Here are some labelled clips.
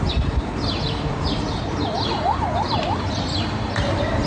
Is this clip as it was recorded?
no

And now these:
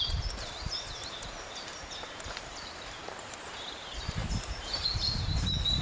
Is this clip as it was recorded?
no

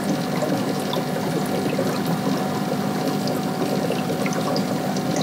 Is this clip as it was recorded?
yes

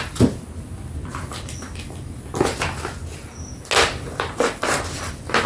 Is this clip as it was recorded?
yes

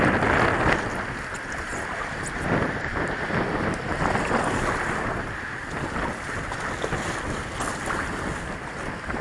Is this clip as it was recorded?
yes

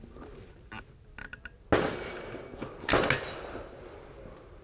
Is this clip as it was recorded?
yes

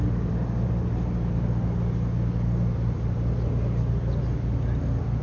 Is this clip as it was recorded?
yes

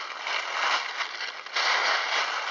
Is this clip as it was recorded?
yes